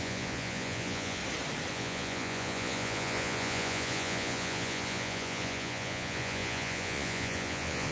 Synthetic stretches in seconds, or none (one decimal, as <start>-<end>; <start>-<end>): 0.0-1.2; 1.7-7.9